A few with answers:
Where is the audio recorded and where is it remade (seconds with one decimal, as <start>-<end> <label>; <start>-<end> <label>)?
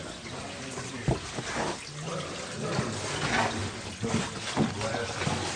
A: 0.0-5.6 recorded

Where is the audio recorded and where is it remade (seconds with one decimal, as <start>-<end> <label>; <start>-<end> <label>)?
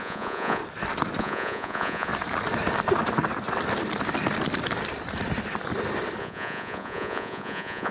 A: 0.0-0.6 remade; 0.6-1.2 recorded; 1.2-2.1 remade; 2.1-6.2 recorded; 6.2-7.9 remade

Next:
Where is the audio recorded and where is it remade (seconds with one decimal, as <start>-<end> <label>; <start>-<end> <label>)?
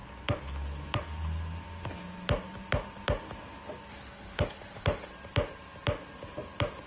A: 0.0-3.9 recorded; 3.9-5.1 remade; 5.1-6.9 recorded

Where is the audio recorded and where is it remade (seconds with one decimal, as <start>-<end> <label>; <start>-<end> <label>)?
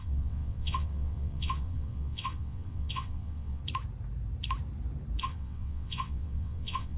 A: 0.0-3.6 remade; 3.6-5.2 recorded; 5.2-7.0 remade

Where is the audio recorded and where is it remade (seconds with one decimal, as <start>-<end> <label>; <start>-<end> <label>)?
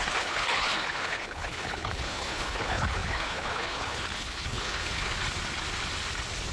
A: 0.0-5.2 remade; 5.2-6.5 recorded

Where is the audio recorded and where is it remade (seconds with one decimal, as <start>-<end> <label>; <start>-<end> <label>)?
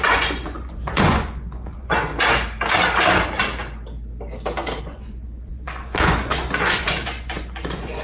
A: 0.0-2.1 remade; 2.1-4.8 recorded; 4.8-8.0 remade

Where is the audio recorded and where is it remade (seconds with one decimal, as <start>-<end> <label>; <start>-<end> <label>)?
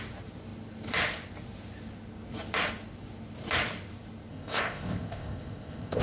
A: 0.0-4.3 recorded; 4.3-6.0 remade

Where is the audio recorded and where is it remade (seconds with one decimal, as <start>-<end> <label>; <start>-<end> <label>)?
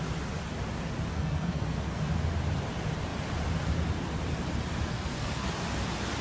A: 0.0-1.1 recorded; 1.1-2.0 remade; 2.0-4.9 recorded; 4.9-5.5 remade; 5.5-6.2 recorded